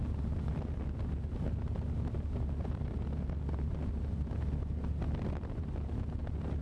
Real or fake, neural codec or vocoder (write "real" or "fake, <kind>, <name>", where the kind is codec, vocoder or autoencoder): real